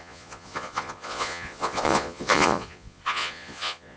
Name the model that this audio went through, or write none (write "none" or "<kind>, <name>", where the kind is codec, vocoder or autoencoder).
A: vocoder, Vocos